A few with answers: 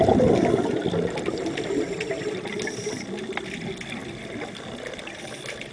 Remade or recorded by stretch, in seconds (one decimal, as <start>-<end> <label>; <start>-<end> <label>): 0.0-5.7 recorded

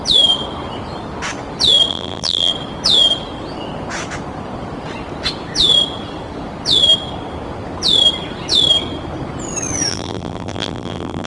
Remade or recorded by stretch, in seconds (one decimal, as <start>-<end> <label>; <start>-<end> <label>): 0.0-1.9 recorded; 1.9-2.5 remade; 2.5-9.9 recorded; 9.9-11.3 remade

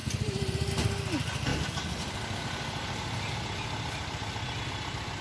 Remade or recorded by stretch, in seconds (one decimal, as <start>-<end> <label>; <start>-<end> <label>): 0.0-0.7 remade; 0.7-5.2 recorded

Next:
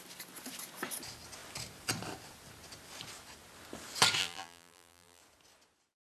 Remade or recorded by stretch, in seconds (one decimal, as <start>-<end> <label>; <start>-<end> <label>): 0.0-4.2 recorded; 4.2-5.2 remade; 5.2-6.2 recorded

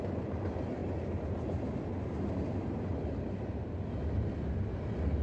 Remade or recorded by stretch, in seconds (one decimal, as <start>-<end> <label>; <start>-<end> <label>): 0.0-5.2 recorded

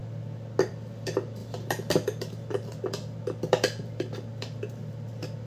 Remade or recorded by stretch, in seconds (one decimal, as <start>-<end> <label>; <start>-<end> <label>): 0.0-0.7 recorded; 0.7-5.5 remade